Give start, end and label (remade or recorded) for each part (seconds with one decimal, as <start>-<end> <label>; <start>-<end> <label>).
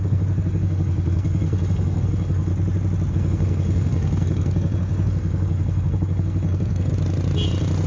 0.0-2.5 remade; 2.5-3.1 recorded; 3.1-6.9 remade; 6.9-7.9 recorded